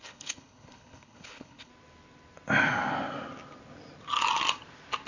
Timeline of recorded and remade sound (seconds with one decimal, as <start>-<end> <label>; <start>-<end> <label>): 0.0-1.7 remade; 1.7-5.1 recorded